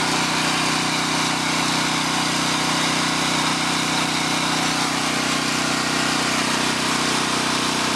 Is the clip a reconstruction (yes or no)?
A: no